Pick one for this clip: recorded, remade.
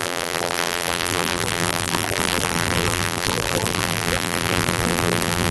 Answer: remade